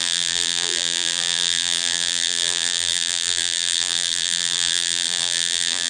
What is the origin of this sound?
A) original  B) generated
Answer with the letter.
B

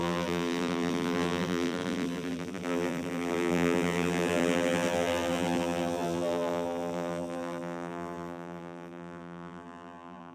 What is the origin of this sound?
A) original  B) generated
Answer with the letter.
B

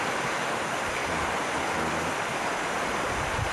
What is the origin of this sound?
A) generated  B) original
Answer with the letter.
B